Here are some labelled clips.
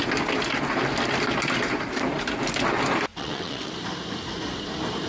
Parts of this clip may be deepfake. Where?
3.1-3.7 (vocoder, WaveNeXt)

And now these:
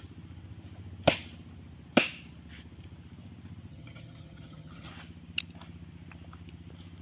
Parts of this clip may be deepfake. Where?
3.7-4.9 (vocoder, HiFi-GAN)

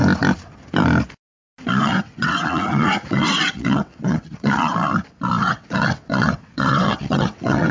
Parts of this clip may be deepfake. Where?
1.8-4.7 (vocoder, WaveNeXt); 5.4-7.7